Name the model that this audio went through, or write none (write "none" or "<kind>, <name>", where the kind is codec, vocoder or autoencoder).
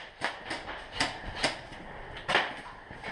none